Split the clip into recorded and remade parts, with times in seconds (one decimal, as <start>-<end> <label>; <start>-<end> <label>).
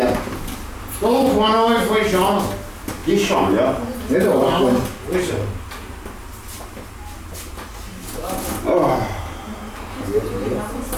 0.0-11.0 recorded